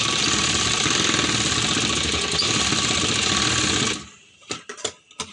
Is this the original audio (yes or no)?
yes